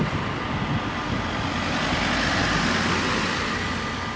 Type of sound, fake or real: real